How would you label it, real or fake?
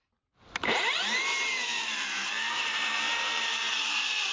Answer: fake